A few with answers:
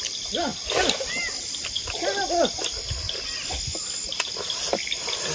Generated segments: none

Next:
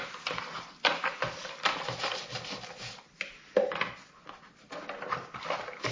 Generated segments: none

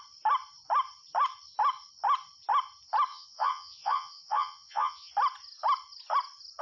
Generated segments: 3.1-5.1

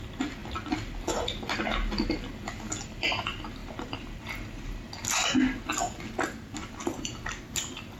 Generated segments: 3.6-4.9; 6.6-7.3

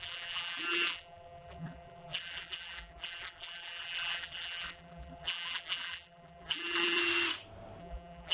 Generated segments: 0.0-7.0; 7.8-8.3

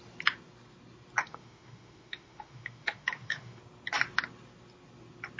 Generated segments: 1.2-3.6

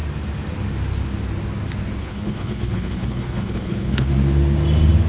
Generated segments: 2.0-4.1

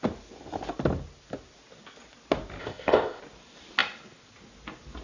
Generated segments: 2.6-3.2